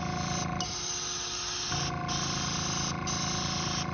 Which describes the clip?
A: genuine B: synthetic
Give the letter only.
A